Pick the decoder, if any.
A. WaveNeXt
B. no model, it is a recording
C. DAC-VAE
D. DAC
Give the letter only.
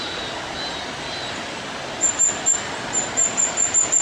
B